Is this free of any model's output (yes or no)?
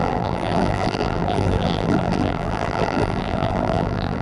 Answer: no